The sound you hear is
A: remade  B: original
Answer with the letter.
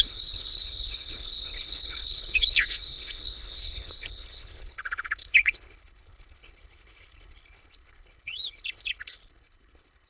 A